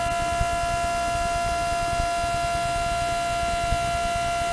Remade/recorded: recorded